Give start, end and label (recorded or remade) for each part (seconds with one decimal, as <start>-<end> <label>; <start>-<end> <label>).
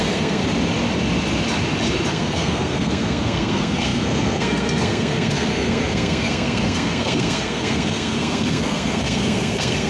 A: 0.0-0.4 remade; 0.4-2.1 recorded; 2.1-9.9 remade